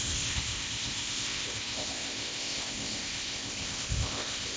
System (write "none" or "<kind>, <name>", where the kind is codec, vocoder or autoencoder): codec, ZipCodec